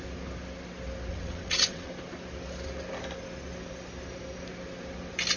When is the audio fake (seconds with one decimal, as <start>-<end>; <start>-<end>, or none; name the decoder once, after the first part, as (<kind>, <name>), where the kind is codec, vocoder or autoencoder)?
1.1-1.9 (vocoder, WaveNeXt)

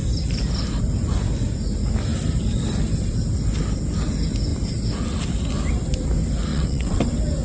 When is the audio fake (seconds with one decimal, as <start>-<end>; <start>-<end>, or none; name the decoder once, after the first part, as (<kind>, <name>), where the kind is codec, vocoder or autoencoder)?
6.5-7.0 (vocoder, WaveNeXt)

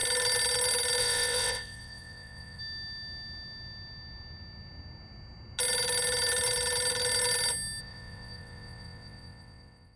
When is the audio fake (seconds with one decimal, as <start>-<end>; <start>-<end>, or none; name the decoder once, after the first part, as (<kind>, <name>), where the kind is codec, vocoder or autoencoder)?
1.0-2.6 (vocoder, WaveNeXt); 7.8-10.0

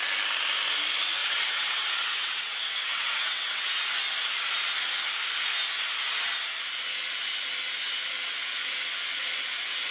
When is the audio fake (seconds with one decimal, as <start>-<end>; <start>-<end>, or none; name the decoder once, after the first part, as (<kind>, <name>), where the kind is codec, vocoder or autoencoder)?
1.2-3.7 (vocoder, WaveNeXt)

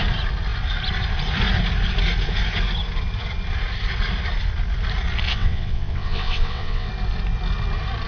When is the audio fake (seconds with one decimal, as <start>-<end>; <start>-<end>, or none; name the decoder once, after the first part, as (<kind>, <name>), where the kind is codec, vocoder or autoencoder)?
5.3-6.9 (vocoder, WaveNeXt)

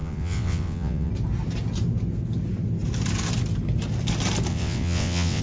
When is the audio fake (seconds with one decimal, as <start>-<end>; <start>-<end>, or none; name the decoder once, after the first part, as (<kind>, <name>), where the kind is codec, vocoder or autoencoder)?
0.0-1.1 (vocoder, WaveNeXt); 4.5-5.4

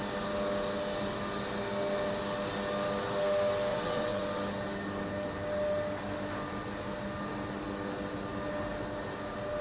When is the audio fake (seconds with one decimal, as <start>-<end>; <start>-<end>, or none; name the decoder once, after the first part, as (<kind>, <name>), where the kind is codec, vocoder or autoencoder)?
3.7-4.2 (vocoder, WaveNeXt)

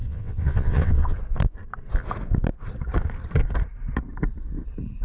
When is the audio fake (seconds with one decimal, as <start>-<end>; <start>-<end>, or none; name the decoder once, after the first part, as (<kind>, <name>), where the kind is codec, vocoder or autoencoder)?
0.0-1.2 (vocoder, WaveNeXt)